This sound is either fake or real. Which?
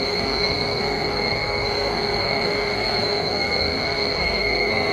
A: fake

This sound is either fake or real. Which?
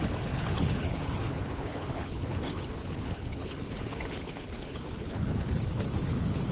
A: fake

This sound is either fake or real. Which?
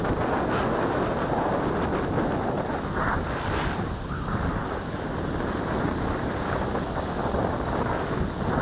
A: real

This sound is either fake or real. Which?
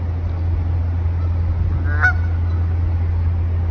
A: real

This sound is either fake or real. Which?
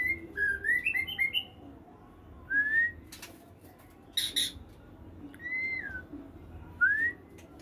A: real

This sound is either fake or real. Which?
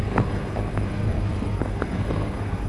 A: fake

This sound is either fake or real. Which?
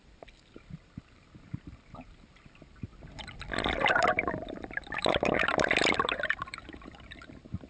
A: fake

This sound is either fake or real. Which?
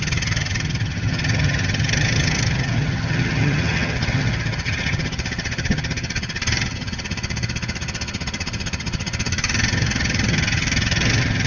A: fake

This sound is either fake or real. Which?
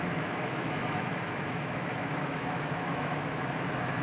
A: fake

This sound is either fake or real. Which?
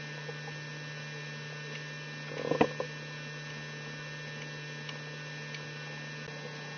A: real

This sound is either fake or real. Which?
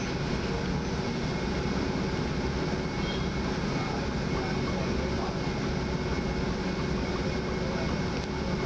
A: real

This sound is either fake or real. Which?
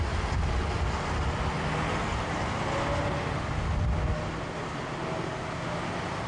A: real